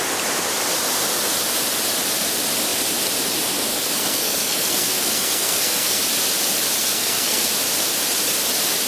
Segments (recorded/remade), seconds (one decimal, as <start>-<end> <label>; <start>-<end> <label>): 0.0-3.7 recorded; 3.7-6.0 remade; 6.0-6.8 recorded; 6.8-7.5 remade; 7.5-8.9 recorded